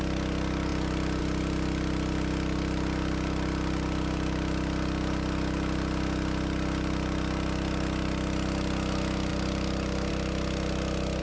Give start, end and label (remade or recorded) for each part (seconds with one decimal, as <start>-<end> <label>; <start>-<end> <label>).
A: 0.0-9.3 recorded; 9.3-10.1 remade; 10.1-11.2 recorded